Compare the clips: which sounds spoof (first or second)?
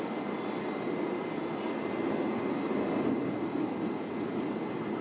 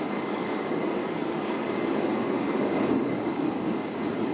second